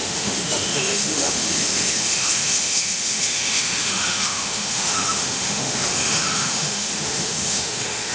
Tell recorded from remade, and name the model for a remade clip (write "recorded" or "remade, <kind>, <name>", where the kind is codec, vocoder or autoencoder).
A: remade, autoencoder, DAC-VAE